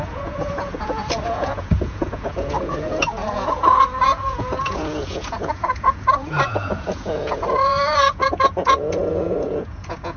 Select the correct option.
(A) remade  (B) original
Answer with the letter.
A